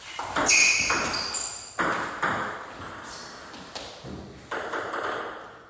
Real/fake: real